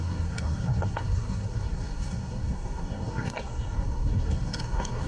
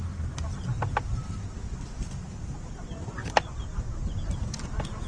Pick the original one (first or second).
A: second